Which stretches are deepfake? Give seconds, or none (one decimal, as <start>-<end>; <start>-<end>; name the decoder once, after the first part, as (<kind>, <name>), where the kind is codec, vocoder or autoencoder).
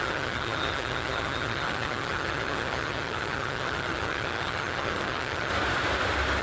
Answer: 0.0-5.5 (vocoder, HiFi-GAN)